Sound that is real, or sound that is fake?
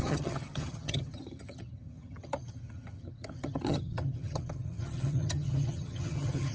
fake